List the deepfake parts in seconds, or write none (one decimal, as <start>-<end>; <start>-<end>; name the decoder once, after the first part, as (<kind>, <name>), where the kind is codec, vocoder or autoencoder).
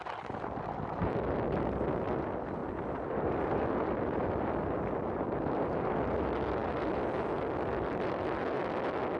2.6-5.9 (vocoder, BigVGAN v2); 6.6-8.4